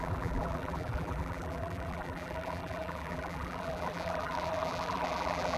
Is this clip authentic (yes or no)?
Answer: no